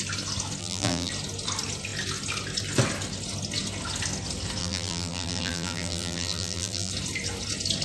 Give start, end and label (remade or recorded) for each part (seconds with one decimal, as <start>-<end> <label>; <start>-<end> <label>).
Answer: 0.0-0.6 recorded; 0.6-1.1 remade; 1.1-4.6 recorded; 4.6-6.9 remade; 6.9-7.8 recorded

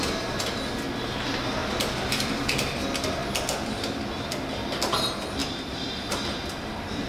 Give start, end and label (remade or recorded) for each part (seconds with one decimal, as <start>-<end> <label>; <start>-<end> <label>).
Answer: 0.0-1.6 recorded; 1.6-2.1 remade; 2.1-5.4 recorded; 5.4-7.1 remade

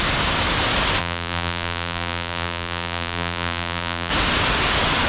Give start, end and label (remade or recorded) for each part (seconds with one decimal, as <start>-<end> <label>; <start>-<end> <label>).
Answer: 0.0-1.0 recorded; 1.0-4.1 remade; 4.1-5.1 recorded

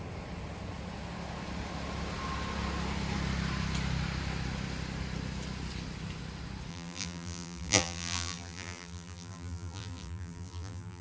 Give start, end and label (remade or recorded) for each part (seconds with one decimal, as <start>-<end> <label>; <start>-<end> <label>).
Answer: 0.0-6.7 recorded; 6.7-11.0 remade

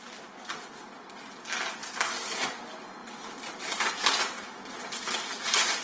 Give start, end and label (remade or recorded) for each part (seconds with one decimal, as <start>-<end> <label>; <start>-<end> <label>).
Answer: 0.0-1.8 recorded; 1.8-2.6 remade; 2.6-5.8 recorded